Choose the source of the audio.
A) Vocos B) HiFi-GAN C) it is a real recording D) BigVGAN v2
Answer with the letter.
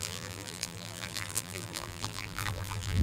D